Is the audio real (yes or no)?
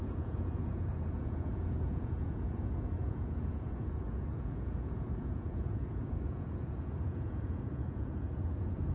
no